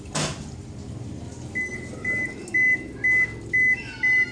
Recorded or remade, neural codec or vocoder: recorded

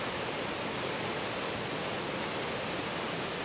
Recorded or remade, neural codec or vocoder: recorded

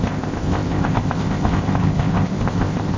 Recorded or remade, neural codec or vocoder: remade, codec, ZipCodec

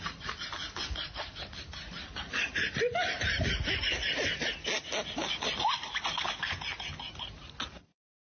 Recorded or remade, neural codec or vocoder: recorded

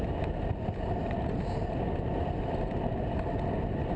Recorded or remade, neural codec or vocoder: recorded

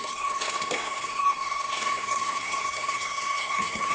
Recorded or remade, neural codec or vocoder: remade, codec, SNAC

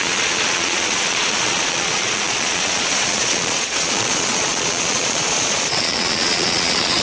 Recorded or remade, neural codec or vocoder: remade, vocoder, Vocos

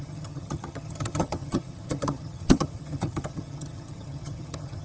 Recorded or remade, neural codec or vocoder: remade, vocoder, HiFi-GAN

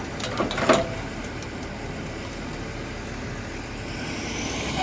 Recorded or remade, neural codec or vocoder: recorded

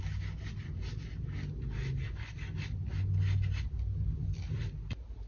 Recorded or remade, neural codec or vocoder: recorded